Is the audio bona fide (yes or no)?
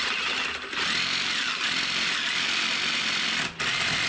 yes